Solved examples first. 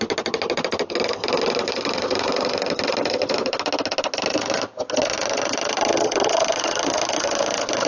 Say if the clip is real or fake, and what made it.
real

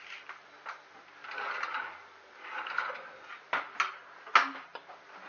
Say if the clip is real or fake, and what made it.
real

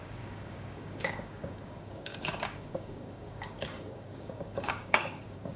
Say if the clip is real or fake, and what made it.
fake, codec, DAC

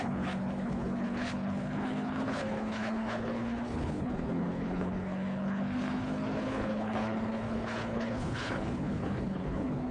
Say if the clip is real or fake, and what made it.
fake, codec, HILCodec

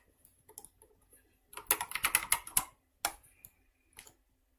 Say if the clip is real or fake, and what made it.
real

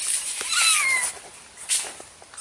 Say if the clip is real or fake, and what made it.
real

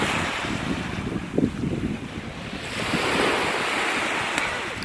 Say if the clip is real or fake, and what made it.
real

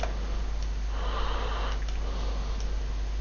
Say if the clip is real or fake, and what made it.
real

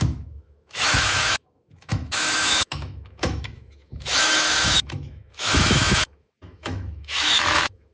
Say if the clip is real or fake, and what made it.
fake, autoencoder, DAC-VAE